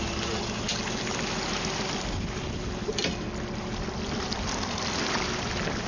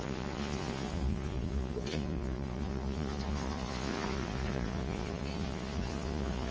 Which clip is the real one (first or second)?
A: first